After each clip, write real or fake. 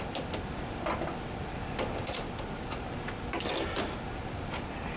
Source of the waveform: real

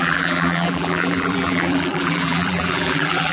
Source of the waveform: fake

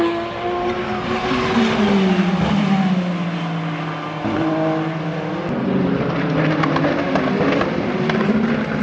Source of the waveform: real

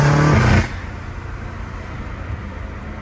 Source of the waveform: real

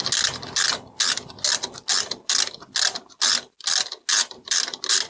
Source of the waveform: real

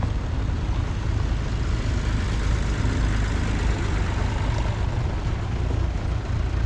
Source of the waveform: real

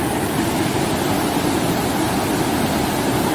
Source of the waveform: real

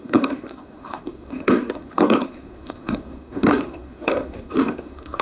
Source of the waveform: fake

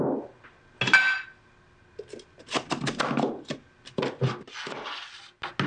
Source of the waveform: real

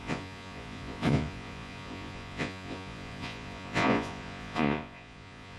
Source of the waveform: fake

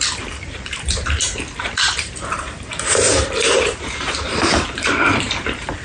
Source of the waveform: fake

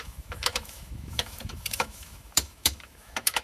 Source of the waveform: fake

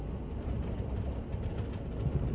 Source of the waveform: real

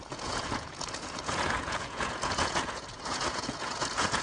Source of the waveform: fake